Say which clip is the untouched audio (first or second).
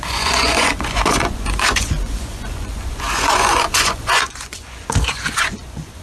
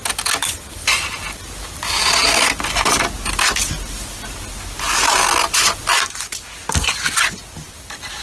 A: second